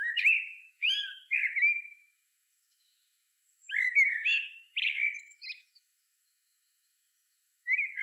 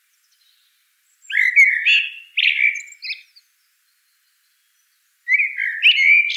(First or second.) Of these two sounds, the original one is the second